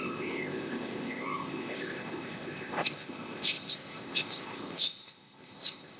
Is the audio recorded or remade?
remade